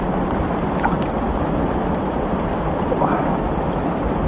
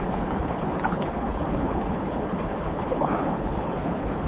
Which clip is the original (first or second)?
first